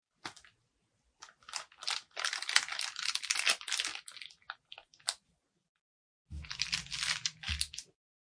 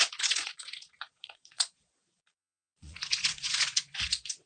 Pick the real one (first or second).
first